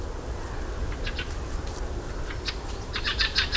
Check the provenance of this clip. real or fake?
real